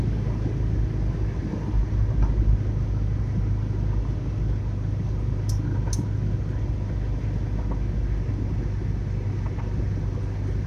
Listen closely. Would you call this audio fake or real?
real